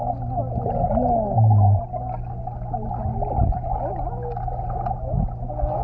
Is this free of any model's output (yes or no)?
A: yes